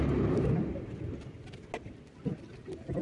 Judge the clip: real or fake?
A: real